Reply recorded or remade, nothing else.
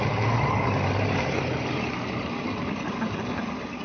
recorded